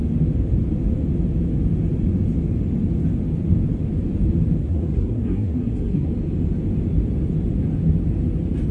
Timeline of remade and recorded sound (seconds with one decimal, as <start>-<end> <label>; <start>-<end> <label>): 0.0-4.6 recorded; 4.6-6.1 remade; 6.1-8.7 recorded